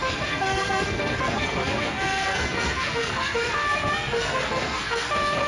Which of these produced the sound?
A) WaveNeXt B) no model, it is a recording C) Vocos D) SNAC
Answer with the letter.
D